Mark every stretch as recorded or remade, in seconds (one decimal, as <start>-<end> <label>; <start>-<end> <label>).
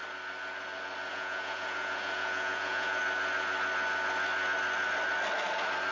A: 0.0-1.1 recorded; 1.1-3.0 remade; 3.0-5.9 recorded